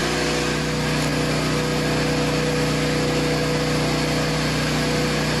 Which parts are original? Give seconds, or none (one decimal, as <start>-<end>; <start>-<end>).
0.0-5.4

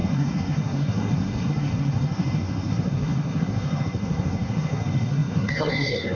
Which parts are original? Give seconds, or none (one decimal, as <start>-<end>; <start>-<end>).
none

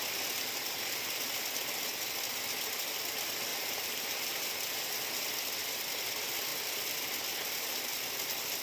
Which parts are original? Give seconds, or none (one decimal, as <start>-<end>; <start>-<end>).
0.0-3.5; 4.8-8.6

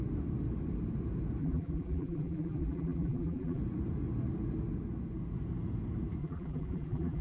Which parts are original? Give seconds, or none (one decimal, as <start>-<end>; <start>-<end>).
0.0-1.4; 3.6-6.2

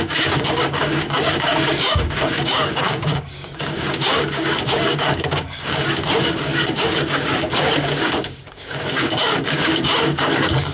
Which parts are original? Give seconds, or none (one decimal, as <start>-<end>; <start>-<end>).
none